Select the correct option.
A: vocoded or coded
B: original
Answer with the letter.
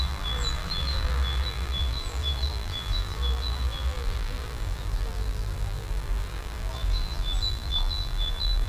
A